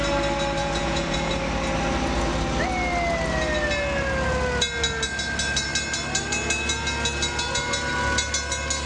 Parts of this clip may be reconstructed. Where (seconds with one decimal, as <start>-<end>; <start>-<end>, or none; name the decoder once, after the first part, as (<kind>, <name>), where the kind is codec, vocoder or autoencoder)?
0.6-1.3 (vocoder, Vocos)